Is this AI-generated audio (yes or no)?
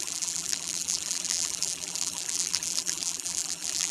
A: yes